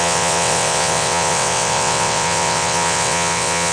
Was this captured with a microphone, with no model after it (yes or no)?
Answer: no